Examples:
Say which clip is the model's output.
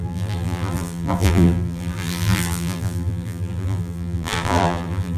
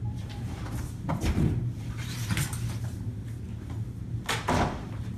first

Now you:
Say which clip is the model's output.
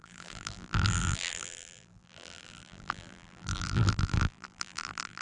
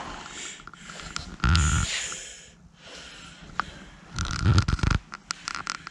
first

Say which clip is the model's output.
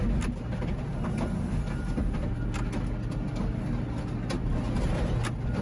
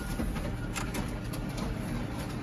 second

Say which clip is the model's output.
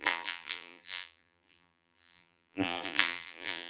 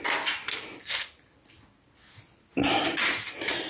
first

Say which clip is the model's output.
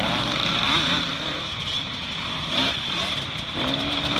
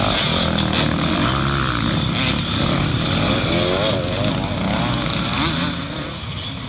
first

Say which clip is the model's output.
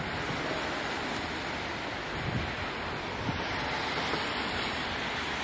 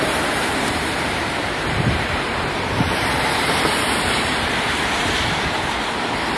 second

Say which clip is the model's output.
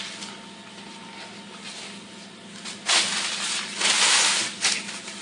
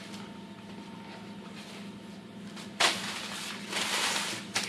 second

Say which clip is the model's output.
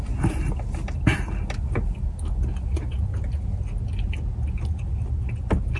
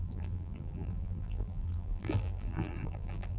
second